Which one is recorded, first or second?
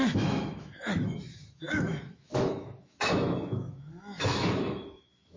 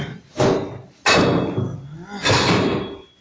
second